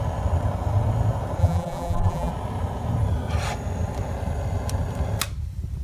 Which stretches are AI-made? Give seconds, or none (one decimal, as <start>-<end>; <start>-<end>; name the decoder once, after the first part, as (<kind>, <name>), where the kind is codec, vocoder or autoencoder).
1.4-2.3 (vocoder, BigVGAN v2)